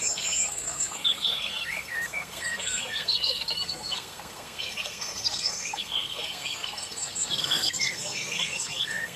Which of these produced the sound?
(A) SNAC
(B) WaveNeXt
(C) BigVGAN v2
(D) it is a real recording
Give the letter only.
A